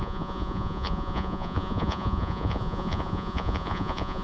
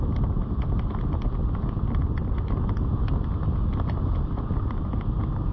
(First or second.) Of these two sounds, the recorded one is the second